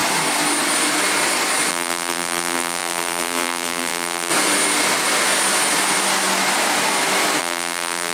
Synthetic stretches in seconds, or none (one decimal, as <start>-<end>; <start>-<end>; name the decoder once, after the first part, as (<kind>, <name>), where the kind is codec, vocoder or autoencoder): 1.7-4.3 (vocoder, BigVGAN v2); 7.4-8.1